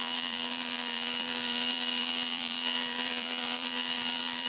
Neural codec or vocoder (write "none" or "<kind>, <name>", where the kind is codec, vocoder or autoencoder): vocoder, BigVGAN v2